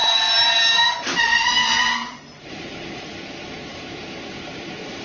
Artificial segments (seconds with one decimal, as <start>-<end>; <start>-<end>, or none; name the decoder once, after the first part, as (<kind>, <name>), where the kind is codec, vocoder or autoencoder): 0.0-3.0 (vocoder, BigVGAN v2); 3.7-5.0